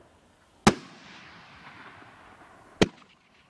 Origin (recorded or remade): recorded